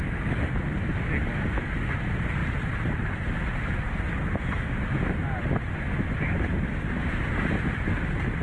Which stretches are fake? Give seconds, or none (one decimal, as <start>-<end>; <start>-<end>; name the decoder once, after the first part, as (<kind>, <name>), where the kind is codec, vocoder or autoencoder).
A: 2.4-3.9 (vocoder, BigVGAN v2)